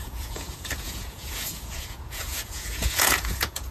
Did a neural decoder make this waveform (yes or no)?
yes